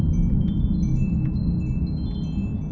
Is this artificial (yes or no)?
no